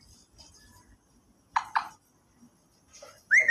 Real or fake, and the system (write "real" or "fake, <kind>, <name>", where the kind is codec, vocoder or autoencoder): real